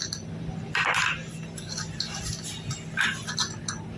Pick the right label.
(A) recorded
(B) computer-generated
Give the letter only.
A